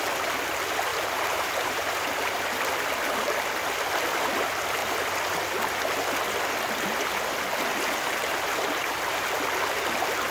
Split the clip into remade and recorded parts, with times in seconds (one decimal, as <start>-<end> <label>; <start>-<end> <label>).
0.0-0.9 recorded; 0.9-2.4 remade; 2.4-10.3 recorded